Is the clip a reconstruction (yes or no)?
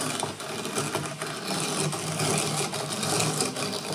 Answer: no